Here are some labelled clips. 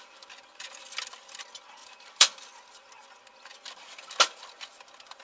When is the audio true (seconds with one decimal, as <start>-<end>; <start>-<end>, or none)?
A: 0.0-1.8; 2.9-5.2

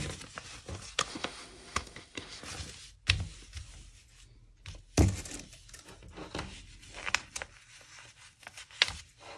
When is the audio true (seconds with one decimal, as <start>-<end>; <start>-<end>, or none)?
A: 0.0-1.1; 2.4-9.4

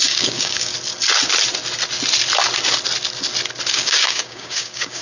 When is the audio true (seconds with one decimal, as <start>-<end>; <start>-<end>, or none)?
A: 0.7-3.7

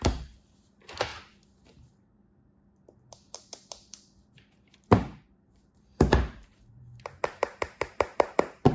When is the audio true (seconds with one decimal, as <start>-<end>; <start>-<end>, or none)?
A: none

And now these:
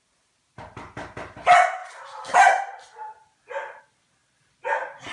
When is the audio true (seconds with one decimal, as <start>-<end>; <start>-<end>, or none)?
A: 0.0-5.1

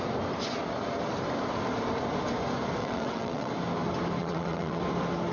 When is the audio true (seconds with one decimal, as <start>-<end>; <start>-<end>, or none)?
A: 0.0-2.8; 3.5-4.2; 4.8-5.3